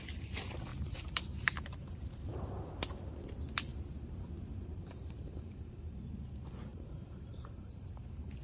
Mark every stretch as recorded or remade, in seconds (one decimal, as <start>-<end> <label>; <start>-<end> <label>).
0.0-0.7 recorded; 0.7-1.9 remade; 1.9-3.7 recorded; 3.7-6.0 remade; 6.0-6.7 recorded; 6.7-8.0 remade; 8.0-8.4 recorded